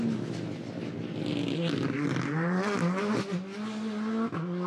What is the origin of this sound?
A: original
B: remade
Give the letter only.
A